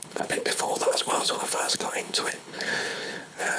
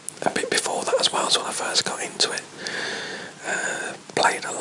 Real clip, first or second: second